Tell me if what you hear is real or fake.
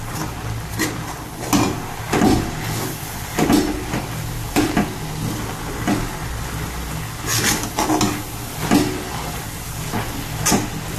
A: real